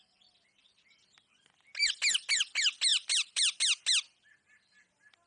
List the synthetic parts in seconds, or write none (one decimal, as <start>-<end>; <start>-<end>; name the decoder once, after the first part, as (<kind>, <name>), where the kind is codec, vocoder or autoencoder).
2.9-3.6 (vocoder, BigVGAN v2)